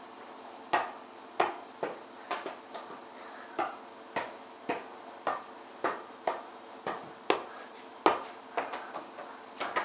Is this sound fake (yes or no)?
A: no